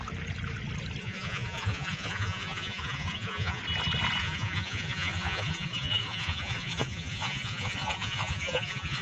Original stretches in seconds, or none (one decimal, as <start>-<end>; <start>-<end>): 0.0-1.0; 3.6-4.2

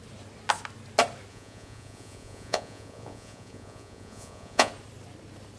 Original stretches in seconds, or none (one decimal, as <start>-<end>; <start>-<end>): 0.0-1.3; 4.7-5.6